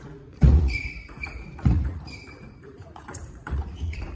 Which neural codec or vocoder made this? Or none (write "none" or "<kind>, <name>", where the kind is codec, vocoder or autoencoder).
vocoder, Vocos